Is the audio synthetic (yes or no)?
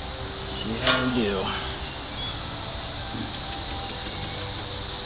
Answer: no